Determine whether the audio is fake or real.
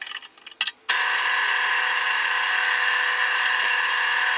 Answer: real